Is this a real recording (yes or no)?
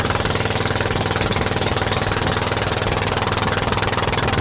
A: yes